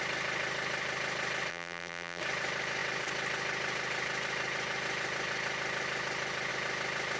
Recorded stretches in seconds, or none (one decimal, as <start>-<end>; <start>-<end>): 0.0-1.5; 2.2-7.2